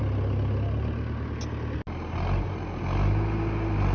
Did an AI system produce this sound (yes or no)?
no